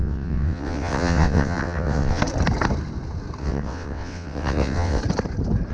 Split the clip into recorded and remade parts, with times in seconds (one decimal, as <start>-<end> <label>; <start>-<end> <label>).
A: 0.0-2.2 remade; 2.2-3.4 recorded; 3.4-5.0 remade; 5.0-5.7 recorded